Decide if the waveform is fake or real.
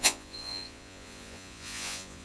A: fake